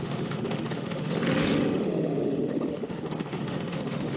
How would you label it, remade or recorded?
remade